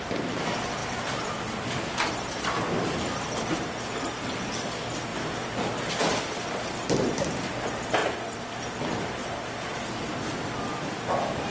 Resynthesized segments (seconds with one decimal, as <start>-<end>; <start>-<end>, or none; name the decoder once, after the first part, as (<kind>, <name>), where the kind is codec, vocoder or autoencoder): 0.8-2.4 (vocoder, BigVGAN v2); 8.0-8.6; 9.2-11.5